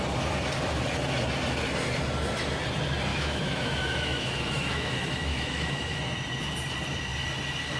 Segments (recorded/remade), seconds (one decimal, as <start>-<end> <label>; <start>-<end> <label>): 0.0-3.1 recorded; 3.1-6.0 remade; 6.0-7.8 recorded